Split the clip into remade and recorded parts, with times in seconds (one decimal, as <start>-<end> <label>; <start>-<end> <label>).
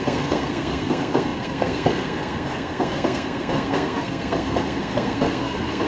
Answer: 0.0-5.9 remade